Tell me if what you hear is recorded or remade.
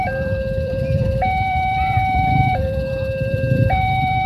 remade